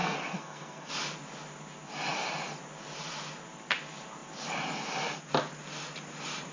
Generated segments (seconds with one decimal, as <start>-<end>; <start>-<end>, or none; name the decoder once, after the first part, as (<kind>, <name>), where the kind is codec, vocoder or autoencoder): 0.0-0.9 (codec, SNAC)